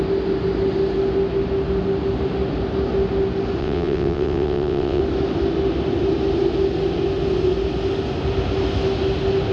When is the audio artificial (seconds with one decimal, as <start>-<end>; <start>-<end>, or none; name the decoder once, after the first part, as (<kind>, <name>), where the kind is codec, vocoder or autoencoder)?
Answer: 3.6-5.0 (vocoder, WaveNeXt)